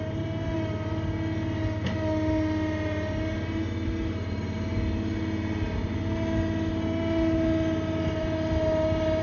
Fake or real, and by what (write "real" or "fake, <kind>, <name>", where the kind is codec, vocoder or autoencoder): real